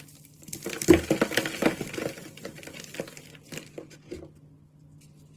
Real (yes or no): yes